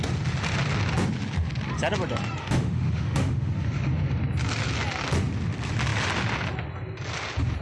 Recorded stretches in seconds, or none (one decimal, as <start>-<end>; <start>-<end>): 0.0-2.4; 3.5-7.6